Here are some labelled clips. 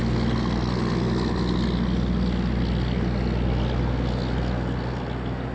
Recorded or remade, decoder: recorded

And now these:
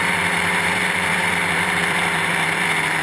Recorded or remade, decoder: remade, vocoder, BigVGAN v2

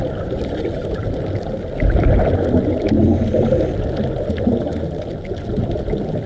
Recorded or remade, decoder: recorded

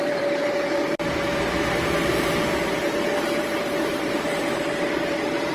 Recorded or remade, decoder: remade, vocoder, BigVGAN v2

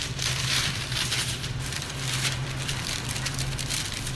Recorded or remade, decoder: remade, vocoder, BigVGAN v2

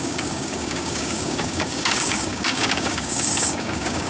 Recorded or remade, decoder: remade, codec, DAC